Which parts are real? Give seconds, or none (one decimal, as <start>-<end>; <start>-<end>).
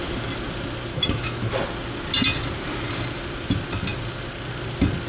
0.0-0.9; 1.5-5.1